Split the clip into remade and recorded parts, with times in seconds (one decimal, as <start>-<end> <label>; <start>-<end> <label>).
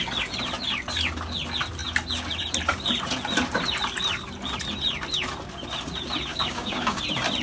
0.0-6.3 recorded; 6.3-7.0 remade; 7.0-7.4 recorded